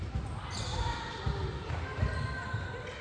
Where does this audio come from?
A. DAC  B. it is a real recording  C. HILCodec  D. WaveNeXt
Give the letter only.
B